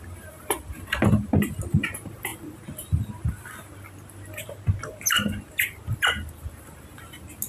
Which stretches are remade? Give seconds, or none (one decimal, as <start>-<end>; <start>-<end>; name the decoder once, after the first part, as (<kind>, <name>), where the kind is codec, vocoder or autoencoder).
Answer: none